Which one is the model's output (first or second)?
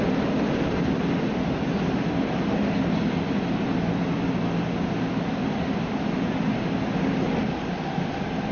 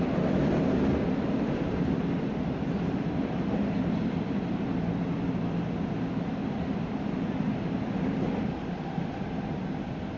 second